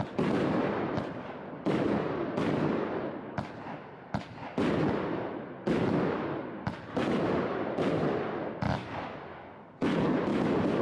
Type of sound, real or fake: real